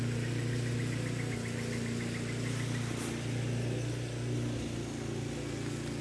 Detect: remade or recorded recorded